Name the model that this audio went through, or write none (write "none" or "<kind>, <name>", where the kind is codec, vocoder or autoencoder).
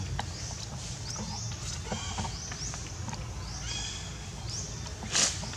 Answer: none